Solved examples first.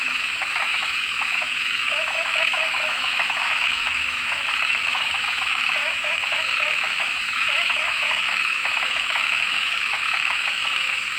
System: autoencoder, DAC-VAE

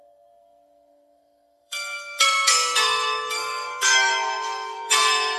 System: codec, SNAC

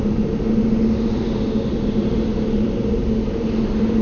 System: none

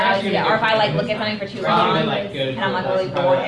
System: none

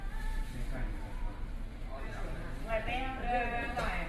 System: vocoder, BigVGAN v2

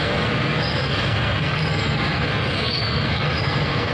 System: codec, SNAC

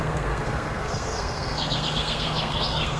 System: codec, SNAC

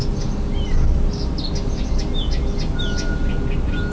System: none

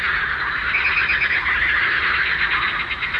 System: none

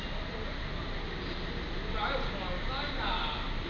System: none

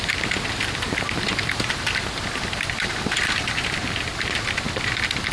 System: none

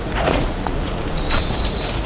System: vocoder, Vocos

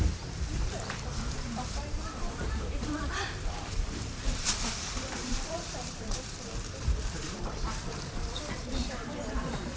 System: vocoder, BigVGAN v2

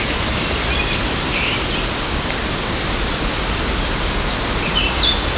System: none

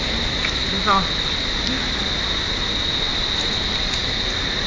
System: none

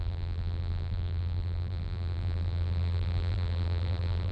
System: vocoder, BigVGAN v2